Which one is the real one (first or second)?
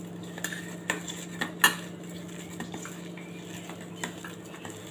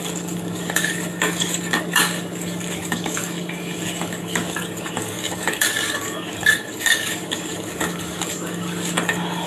first